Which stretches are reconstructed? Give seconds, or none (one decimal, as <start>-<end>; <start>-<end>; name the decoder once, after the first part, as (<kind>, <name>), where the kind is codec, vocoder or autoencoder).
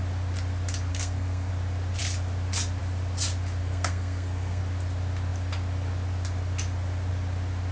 0.9-1.5 (codec, SNAC); 3.6-4.6